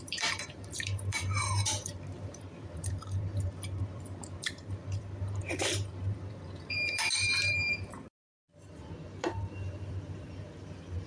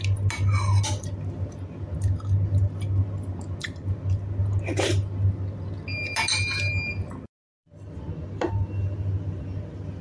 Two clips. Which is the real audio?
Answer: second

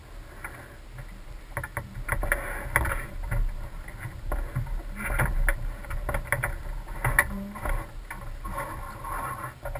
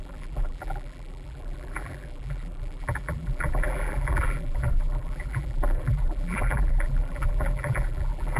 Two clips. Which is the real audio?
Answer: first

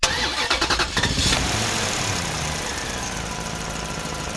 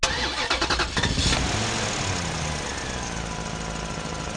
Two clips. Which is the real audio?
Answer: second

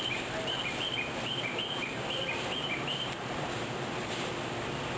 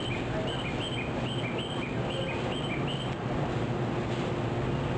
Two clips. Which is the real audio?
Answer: second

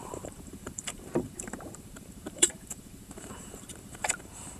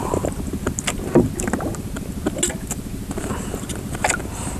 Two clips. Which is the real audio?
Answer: second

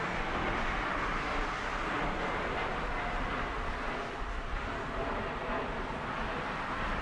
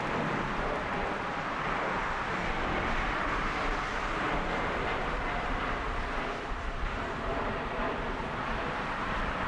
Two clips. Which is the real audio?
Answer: first